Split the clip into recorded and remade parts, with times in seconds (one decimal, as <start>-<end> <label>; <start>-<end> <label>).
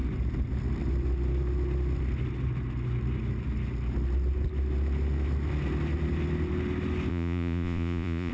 0.0-7.1 recorded; 7.1-8.3 remade